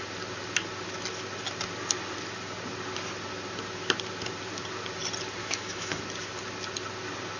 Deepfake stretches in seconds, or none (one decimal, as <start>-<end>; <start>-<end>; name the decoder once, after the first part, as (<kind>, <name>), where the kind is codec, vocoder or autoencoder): 5.4-6.0 (autoencoder, DAC-VAE)